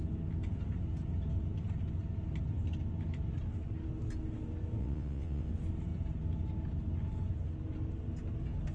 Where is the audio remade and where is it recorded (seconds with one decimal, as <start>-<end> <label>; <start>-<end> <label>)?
0.0-4.8 recorded; 4.8-5.5 remade; 5.5-8.7 recorded